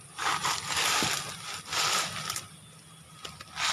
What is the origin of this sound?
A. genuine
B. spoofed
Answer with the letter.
A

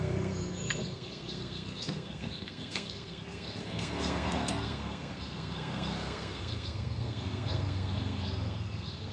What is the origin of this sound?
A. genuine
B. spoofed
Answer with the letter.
B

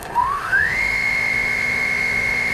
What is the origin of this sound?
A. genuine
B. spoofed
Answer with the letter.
B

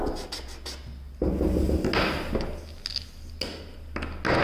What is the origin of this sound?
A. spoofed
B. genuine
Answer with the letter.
B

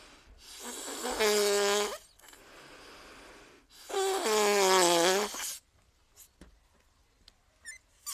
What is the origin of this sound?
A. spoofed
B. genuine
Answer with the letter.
B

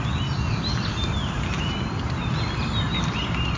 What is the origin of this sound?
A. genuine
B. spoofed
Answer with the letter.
A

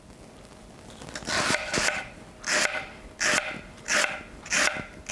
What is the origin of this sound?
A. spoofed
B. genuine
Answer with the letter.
B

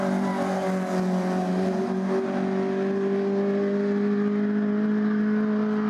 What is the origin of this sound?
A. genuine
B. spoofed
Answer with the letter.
A